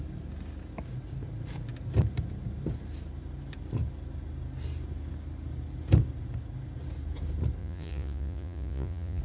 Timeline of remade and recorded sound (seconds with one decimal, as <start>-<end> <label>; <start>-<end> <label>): 0.0-7.6 recorded; 7.6-9.2 remade